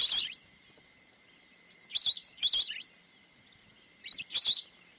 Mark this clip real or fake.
real